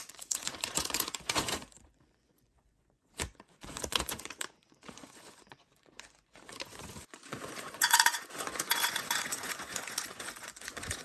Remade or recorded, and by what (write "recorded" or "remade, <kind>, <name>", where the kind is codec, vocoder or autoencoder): remade, vocoder, Vocos